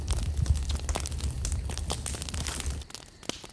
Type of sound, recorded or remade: recorded